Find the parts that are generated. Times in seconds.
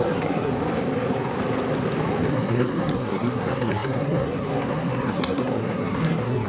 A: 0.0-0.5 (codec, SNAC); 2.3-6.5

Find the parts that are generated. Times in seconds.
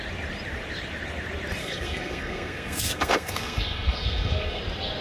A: 1.6-4.6 (codec, SNAC)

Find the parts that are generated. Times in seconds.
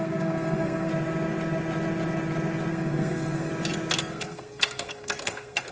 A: 0.0-0.9 (codec, SNAC); 2.7-3.5; 4.0-5.7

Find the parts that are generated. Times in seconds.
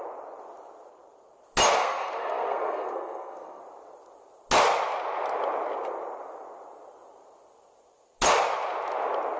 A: 1.7-3.6 (codec, SNAC)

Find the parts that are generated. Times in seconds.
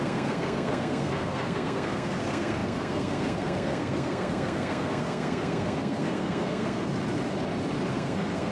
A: 0.0-6.9 (codec, SNAC); 7.9-8.5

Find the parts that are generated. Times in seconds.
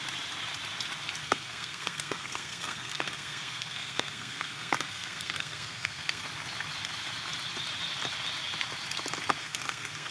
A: 1.2-6.2 (codec, SNAC); 9.4-10.1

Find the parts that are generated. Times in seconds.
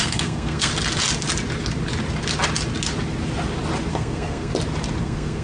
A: 0.0-0.7 (codec, SNAC); 3.9-4.5; 5.0-5.4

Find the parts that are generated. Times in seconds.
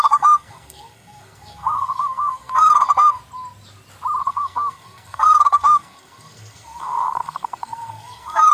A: 0.0-3.2 (codec, SNAC); 4.2-8.5